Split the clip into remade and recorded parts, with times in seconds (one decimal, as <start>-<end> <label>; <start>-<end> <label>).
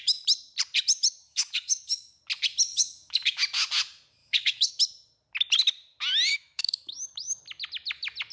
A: 0.0-1.2 recorded; 1.2-2.2 remade; 2.2-2.7 recorded; 2.7-3.4 remade; 3.4-4.2 recorded; 4.2-4.7 remade; 4.7-6.3 recorded; 6.3-7.4 remade; 7.4-8.3 recorded